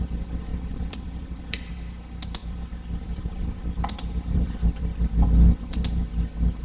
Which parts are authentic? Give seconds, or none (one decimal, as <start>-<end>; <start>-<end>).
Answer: 0.0-0.5; 1.7-2.4; 5.6-6.6